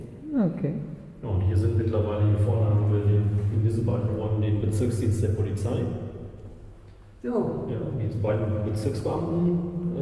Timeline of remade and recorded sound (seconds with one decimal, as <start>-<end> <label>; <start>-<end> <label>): 0.0-6.5 recorded; 6.5-8.3 remade; 8.3-10.0 recorded